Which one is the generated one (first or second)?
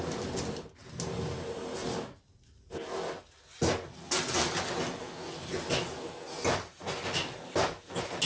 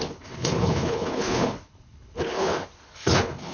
second